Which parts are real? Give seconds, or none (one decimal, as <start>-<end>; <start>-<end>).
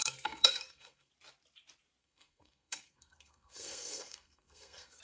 1.1-2.0